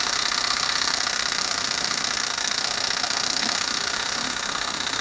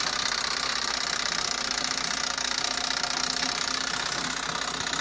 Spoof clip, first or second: first